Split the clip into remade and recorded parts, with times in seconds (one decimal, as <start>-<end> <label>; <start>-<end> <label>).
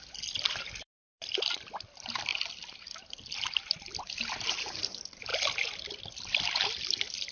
0.0-5.3 remade; 5.3-6.1 recorded; 6.1-7.3 remade